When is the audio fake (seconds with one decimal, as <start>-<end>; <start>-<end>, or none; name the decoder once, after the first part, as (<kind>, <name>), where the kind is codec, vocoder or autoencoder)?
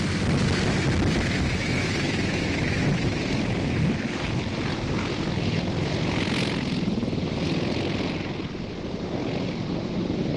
1.6-3.2 (autoencoder, DAC-VAE)